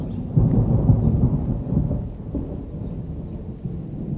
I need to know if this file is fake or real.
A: real